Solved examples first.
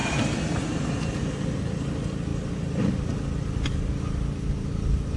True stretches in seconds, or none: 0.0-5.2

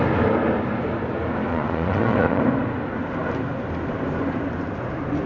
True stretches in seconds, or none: 0.0-1.5; 2.4-5.3

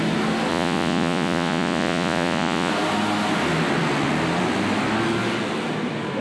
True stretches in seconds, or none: 0.0-0.5; 2.7-6.2

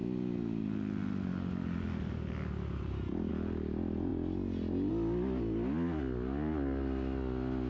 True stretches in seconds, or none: 0.0-7.7

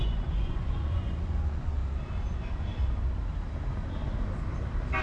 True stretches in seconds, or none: 1.8-5.0

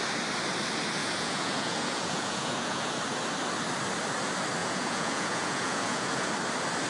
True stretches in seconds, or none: 0.0-1.0; 2.9-4.6; 6.3-6.9

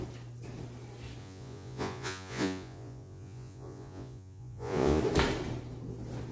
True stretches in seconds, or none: 0.0-1.2; 5.0-6.3